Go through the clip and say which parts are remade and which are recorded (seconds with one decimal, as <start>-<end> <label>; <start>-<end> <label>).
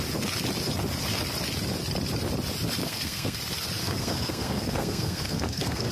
0.0-2.8 recorded; 2.8-3.4 remade; 3.4-3.8 recorded; 3.8-5.9 remade